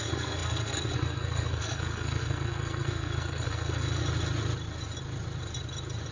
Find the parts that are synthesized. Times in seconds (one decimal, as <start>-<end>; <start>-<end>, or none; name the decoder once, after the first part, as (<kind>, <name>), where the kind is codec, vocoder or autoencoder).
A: 0.0-4.0 (codec, SNAC)